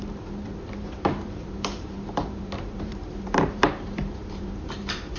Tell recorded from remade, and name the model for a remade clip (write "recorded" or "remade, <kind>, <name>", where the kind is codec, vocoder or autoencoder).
remade, vocoder, BigVGAN v2